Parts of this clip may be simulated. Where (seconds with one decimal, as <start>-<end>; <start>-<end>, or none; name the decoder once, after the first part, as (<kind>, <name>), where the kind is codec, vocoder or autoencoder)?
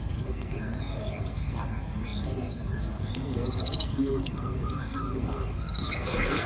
0.0-6.5 (codec, SNAC)